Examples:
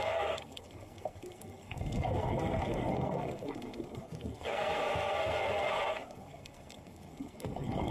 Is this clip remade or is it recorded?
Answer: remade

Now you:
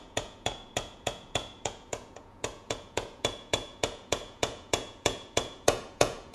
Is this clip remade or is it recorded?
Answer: remade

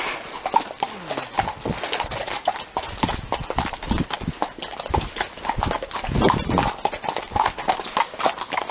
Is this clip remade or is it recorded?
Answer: recorded